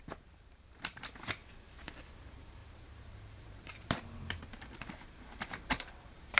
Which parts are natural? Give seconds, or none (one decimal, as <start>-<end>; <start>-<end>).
1.4-2.2